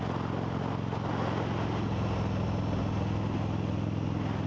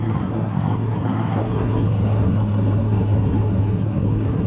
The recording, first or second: first